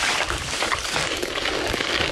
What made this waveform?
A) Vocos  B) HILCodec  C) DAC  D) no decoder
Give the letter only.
C